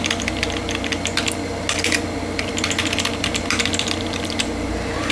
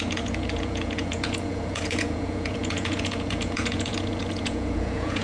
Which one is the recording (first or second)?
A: first